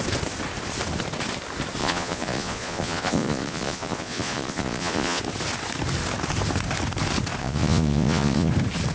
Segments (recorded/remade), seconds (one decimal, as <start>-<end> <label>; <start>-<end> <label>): 0.0-1.8 recorded; 1.8-5.2 remade; 5.2-7.4 recorded; 7.4-8.5 remade; 8.5-8.9 recorded